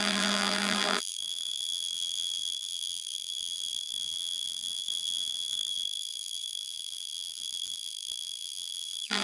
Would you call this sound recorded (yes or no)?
no